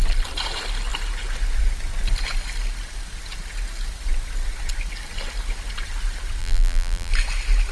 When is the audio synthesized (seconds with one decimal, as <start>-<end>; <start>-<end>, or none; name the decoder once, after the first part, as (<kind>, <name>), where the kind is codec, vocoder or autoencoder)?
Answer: 6.4-7.1 (vocoder, BigVGAN v2)

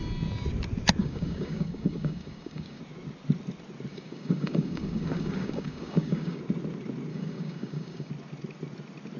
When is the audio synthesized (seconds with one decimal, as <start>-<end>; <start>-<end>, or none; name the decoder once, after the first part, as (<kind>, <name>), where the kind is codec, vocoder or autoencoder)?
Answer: 1.0-2.8 (codec, DAC); 3.9-6.4; 7.1-8.1

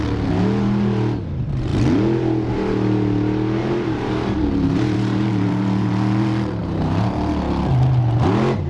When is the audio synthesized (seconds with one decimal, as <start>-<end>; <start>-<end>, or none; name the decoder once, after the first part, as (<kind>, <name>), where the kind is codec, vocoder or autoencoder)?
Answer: 3.6-5.9 (vocoder, BigVGAN v2); 6.6-7.3

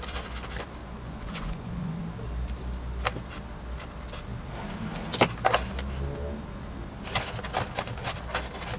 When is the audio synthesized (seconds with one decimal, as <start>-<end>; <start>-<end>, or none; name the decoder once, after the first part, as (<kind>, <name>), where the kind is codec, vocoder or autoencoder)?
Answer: 0.8-2.0 (vocoder, Vocos)